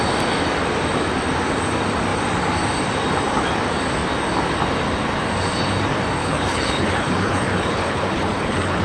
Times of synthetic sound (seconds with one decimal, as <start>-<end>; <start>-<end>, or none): 6.2-8.8